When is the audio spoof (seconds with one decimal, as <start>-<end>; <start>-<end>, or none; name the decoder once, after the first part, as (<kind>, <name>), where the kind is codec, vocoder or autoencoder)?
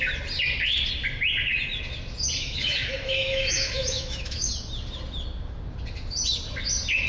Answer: 2.4-4.5 (autoencoder, DAC-VAE)